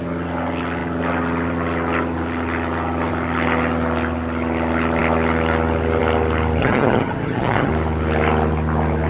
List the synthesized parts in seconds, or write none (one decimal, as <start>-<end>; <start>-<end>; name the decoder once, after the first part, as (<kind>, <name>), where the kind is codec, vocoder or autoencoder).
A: 6.6-7.7 (vocoder, HiFi-GAN)